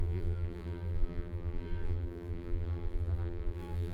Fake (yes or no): yes